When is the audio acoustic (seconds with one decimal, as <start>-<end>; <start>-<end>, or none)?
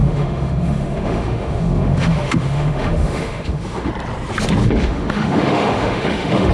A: 3.9-4.6